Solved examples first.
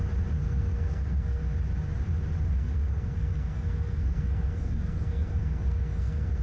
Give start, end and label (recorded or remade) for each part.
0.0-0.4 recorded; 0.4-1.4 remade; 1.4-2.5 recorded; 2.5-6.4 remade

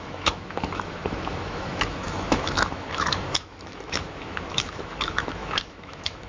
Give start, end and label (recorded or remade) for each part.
0.0-6.3 remade

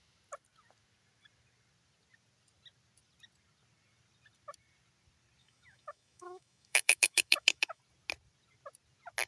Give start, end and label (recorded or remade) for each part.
0.0-5.4 recorded; 5.4-7.8 remade; 7.8-9.3 recorded

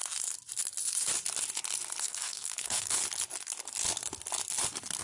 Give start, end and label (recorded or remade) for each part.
0.0-2.0 recorded; 2.0-3.0 remade; 3.0-5.0 recorded

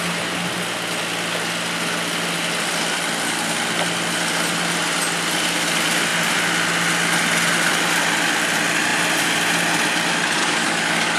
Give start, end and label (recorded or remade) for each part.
0.0-10.4 recorded; 10.4-11.2 remade

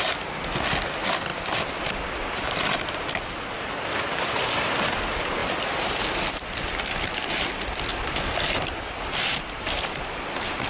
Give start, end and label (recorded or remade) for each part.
0.0-7.9 recorded; 7.9-10.7 remade